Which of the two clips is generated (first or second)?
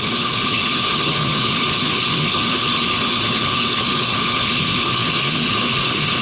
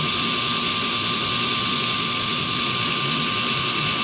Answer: first